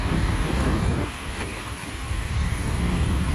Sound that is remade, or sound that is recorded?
remade